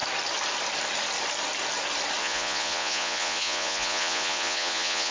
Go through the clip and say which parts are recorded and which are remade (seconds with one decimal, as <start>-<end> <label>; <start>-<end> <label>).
0.0-2.2 recorded; 2.2-5.1 remade